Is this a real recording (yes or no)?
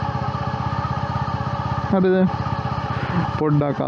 yes